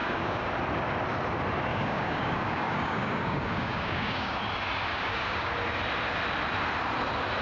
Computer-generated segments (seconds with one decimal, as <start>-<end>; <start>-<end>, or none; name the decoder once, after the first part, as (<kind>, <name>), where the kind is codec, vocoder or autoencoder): 0.0-0.5 (codec, DAC); 1.7-4.4; 4.9-5.5